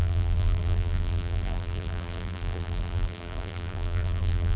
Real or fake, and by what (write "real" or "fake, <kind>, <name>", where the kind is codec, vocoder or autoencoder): fake, vocoder, BigVGAN v2